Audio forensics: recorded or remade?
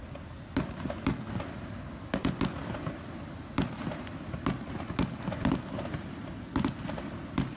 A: recorded